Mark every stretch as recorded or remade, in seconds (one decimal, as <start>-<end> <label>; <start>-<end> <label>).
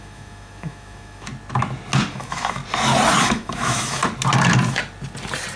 0.0-1.3 remade; 1.3-2.1 recorded; 2.1-2.6 remade; 2.6-3.2 recorded; 3.2-4.0 remade; 4.0-5.6 recorded